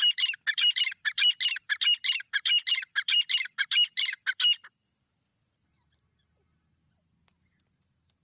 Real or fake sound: fake